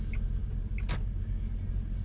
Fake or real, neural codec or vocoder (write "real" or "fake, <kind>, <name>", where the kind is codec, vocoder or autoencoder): real